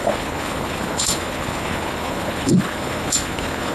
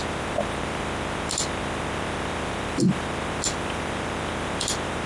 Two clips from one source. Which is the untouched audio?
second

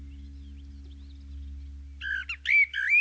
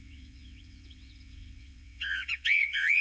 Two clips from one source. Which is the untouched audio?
first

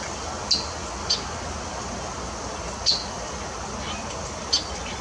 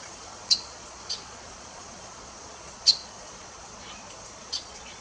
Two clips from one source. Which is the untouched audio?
first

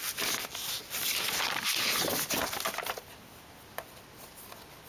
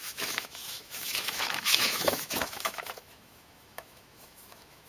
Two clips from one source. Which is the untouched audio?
first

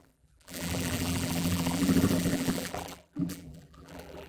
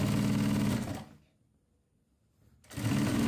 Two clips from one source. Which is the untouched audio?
second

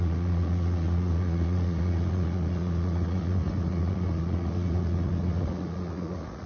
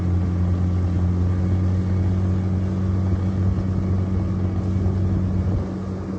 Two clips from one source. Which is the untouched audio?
second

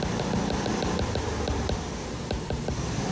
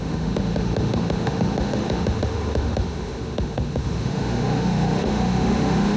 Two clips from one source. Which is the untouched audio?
first